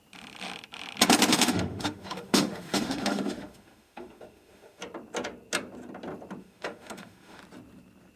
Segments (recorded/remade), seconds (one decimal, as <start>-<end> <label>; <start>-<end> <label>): 0.0-1.3 recorded; 1.3-4.8 remade; 4.8-6.4 recorded; 6.4-7.4 remade; 7.4-8.2 recorded